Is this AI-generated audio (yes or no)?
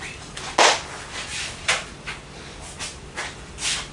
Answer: no